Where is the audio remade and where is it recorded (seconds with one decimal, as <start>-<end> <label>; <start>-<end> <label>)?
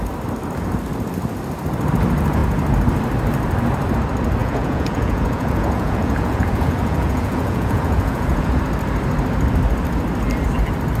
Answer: 0.0-4.4 recorded; 4.4-8.6 remade; 8.6-11.0 recorded